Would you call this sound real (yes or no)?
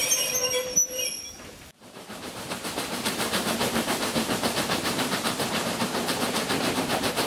no